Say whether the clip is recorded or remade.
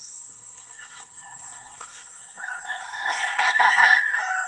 remade